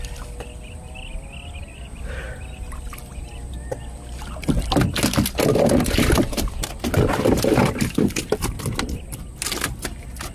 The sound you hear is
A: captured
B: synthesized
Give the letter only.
A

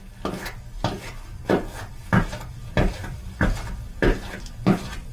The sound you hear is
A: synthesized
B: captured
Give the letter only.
B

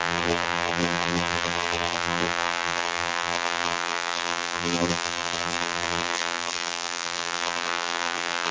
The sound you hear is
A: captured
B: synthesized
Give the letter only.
B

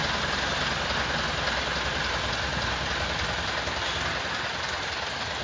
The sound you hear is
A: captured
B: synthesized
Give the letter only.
A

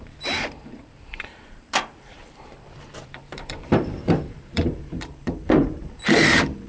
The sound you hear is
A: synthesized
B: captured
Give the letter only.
A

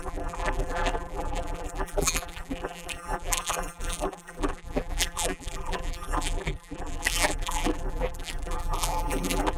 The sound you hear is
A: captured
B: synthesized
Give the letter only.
B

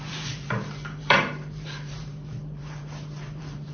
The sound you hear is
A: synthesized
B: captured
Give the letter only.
A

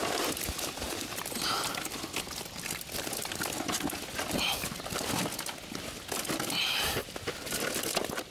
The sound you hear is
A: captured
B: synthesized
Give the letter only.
A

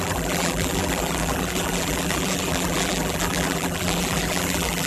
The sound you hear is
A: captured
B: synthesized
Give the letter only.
B